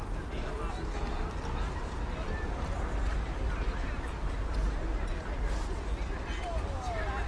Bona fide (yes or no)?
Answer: yes